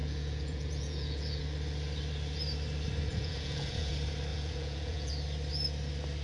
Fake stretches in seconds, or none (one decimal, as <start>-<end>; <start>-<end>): 0.0-1.4; 3.1-3.9; 4.3-5.1